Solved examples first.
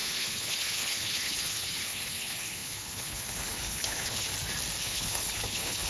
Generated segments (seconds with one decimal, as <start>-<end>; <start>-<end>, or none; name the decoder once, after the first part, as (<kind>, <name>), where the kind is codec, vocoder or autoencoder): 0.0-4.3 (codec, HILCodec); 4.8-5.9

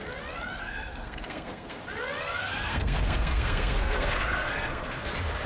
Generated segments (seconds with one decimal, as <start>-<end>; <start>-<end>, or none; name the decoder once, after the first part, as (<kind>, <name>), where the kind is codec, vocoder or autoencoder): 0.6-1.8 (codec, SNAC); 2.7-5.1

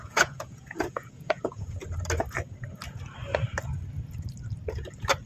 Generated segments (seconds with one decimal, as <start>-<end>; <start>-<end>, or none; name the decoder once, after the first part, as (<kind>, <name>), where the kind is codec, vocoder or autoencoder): 0.0-1.8 (vocoder, Vocos)

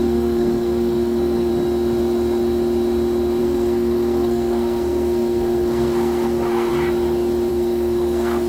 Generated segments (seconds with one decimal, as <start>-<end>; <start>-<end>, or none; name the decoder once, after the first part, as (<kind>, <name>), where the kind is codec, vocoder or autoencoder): 0.0-1.5 (codec, SNAC); 3.4-6.7; 7.5-8.5

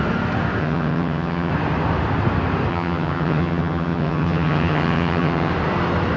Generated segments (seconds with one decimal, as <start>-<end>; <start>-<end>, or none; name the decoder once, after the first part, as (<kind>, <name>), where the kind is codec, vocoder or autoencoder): 0.6-1.5 (vocoder, HiFi-GAN); 2.7-5.5

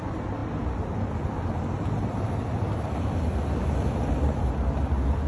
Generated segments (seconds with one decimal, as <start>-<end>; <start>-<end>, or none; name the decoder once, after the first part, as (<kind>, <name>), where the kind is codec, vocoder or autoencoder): none